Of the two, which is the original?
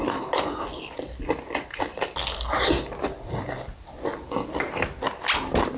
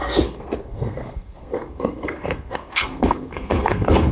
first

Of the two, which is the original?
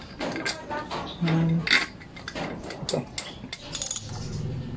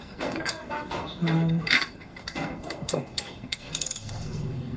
first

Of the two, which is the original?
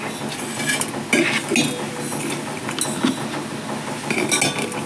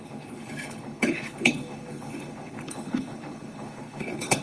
first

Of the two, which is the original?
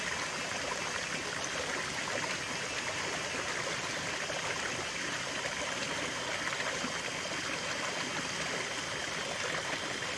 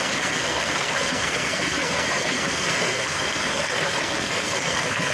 first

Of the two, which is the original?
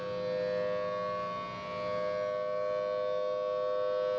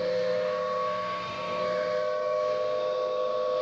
first